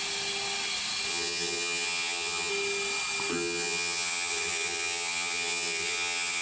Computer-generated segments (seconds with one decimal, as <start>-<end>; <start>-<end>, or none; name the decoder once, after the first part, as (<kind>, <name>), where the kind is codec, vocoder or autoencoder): 1.1-2.5 (vocoder, HiFi-GAN); 3.3-6.4